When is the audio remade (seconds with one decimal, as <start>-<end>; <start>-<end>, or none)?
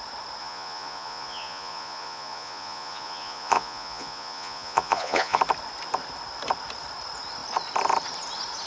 0.4-5.4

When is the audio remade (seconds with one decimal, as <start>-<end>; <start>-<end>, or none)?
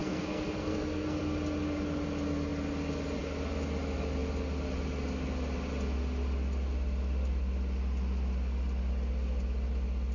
0.0-1.2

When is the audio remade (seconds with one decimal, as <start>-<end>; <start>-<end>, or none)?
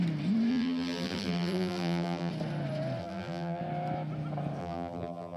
0.5-2.3; 3.0-3.6; 4.6-5.4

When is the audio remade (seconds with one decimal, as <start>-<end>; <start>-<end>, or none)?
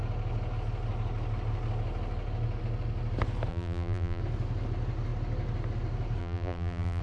3.5-4.2; 6.2-7.0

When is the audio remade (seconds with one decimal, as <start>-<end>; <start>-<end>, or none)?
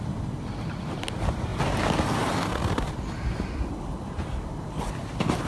none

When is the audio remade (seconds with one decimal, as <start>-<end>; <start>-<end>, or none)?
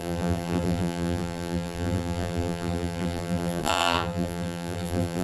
0.0-5.2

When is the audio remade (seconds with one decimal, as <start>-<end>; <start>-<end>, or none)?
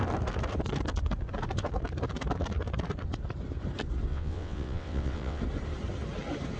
4.1-5.4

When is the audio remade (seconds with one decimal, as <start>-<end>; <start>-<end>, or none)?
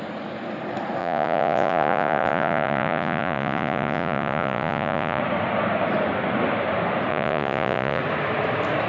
1.0-5.2; 7.1-8.0